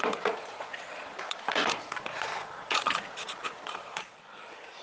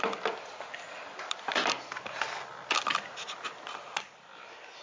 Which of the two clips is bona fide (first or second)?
second